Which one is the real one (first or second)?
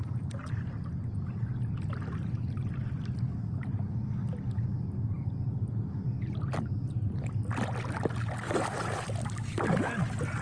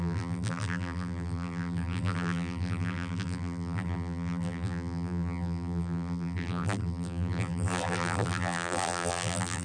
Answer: first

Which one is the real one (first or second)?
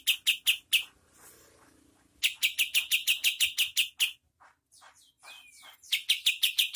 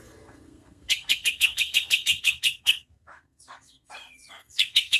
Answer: first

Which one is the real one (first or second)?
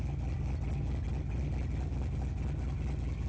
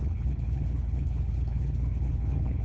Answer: first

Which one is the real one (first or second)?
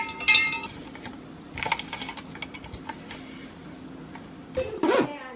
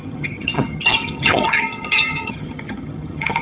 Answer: first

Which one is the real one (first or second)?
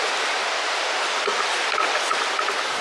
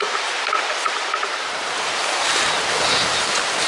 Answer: first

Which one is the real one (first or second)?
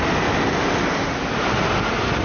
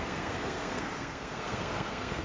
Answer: first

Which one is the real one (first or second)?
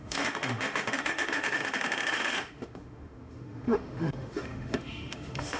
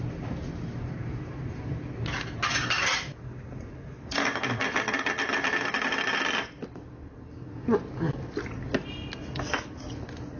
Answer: second